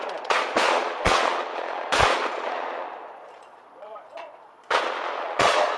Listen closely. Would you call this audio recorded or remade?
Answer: remade